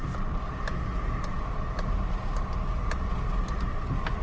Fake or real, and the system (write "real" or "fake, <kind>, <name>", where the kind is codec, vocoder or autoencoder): real